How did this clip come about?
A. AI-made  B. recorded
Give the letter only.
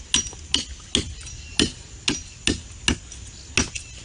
B